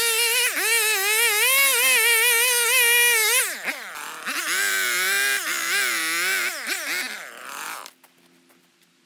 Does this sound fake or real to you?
real